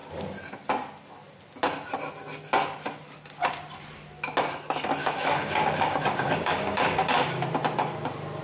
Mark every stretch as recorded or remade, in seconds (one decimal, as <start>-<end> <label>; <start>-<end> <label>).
0.0-5.0 recorded; 5.0-7.4 remade; 7.4-8.4 recorded